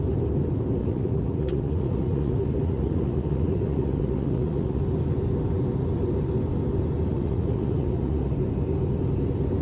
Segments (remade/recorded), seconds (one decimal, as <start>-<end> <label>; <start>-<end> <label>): 0.0-0.8 recorded; 0.8-4.8 remade; 4.8-7.1 recorded; 7.1-8.3 remade; 8.3-9.6 recorded